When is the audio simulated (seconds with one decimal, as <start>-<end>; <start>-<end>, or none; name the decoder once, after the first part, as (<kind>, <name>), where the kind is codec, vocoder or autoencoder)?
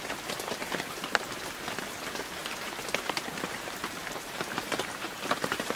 0.6-1.4 (vocoder, BigVGAN v2); 2.4-5.8